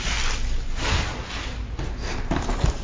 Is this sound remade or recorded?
recorded